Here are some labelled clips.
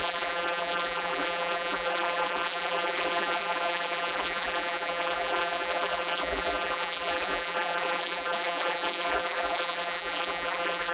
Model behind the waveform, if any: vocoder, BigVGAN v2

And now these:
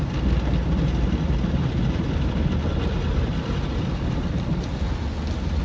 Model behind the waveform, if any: none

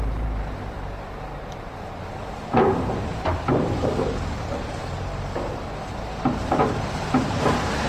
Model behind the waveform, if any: vocoder, BigVGAN v2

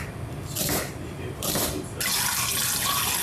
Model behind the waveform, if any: none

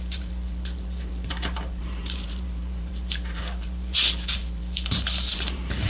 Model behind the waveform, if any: vocoder, BigVGAN v2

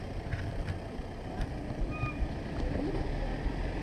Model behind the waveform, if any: none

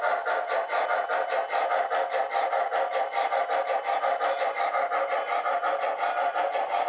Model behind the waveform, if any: none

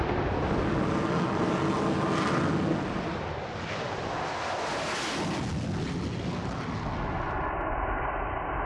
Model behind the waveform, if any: none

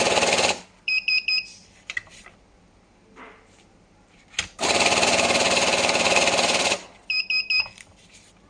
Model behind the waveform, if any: vocoder, BigVGAN v2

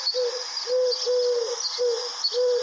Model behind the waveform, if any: none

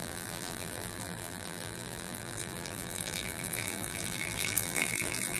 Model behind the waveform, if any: vocoder, BigVGAN v2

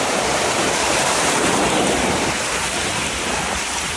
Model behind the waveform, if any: vocoder, BigVGAN v2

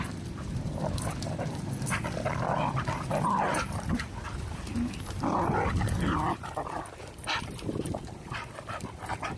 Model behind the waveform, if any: vocoder, BigVGAN v2